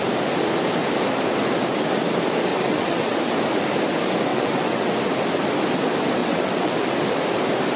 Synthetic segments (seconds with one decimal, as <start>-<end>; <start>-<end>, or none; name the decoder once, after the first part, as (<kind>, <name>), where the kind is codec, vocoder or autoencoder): 2.5-3.2 (vocoder, WaveNeXt); 4.3-4.9; 6.2-6.7